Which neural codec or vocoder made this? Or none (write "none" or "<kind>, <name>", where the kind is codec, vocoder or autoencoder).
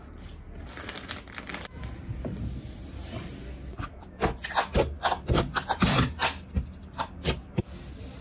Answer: none